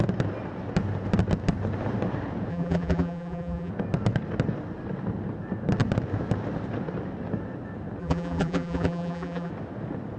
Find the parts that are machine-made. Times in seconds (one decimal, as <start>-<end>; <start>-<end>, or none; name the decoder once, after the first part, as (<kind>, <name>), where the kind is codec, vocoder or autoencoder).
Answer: 2.5-3.7 (vocoder, BigVGAN v2); 8.0-9.5